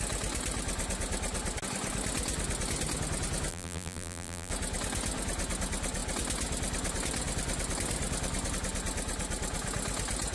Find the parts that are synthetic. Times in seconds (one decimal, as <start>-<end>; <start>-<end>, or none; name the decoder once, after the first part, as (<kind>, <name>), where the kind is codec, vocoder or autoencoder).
3.5-4.5 (vocoder, BigVGAN v2)